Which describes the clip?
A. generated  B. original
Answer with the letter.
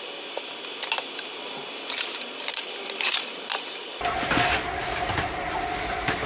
B